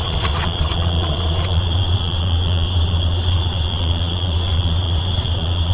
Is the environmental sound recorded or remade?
remade